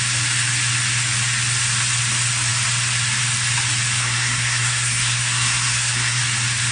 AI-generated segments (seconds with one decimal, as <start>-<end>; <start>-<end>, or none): 4.0-6.2